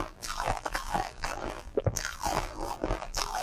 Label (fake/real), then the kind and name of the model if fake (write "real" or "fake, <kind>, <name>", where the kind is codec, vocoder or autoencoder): fake, vocoder, BigVGAN v2